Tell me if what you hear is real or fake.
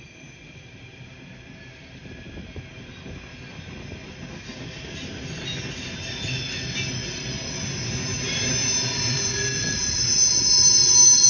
real